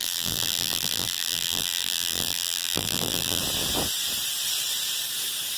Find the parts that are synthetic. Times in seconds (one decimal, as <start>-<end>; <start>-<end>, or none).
0.0-3.4